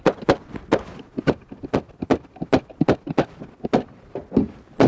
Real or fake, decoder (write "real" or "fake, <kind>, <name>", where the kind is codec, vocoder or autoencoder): real